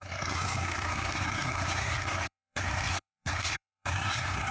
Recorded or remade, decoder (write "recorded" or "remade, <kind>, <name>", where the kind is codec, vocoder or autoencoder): remade, codec, SNAC